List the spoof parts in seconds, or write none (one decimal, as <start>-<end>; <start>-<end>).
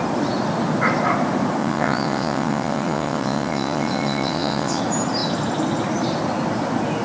1.6-4.8